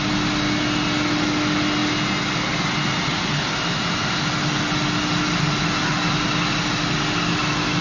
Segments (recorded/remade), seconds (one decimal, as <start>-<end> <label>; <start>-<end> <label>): 0.0-7.8 recorded